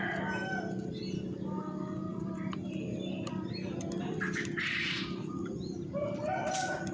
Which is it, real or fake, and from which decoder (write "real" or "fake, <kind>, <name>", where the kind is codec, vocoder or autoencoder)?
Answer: real